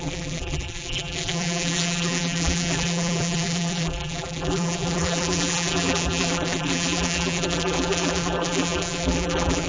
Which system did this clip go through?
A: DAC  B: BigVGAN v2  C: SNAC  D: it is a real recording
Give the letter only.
B